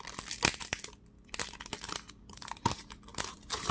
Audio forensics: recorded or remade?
recorded